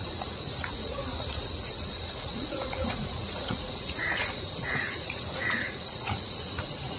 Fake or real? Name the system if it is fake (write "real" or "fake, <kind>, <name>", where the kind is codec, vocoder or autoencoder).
fake, vocoder, Vocos